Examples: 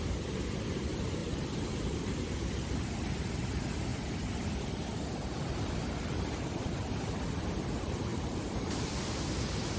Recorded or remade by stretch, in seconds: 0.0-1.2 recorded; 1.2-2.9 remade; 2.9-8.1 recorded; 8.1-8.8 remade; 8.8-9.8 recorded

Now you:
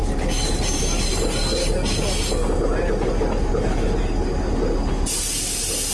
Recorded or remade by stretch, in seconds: 0.0-1.1 remade; 1.1-5.9 recorded

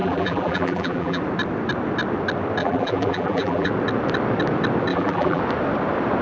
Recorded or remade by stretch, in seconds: 0.0-1.2 remade; 1.2-2.6 recorded; 2.6-3.7 remade; 3.7-4.9 recorded; 4.9-5.4 remade; 5.4-6.2 recorded

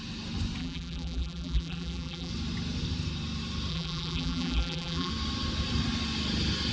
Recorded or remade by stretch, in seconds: 0.0-0.6 recorded; 0.6-2.3 remade; 2.3-3.7 recorded; 3.7-5.1 remade; 5.1-6.7 recorded

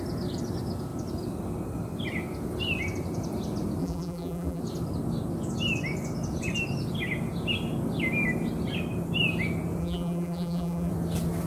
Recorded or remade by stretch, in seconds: 0.0-3.8 recorded; 3.8-4.6 remade; 4.6-9.8 recorded; 9.8-10.9 remade; 10.9-11.5 recorded

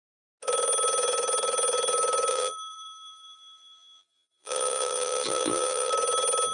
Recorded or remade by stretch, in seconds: 0.0-2.3 recorded; 2.3-5.9 remade; 5.9-6.5 recorded